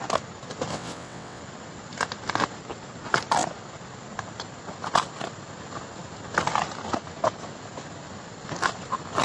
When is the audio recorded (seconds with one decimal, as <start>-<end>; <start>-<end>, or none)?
0.0-0.7; 1.4-9.2